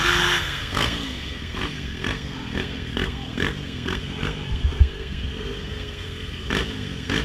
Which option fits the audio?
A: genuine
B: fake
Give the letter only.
B